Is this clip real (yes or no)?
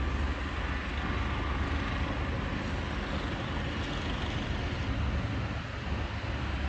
yes